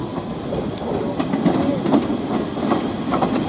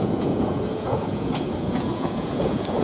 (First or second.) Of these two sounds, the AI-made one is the second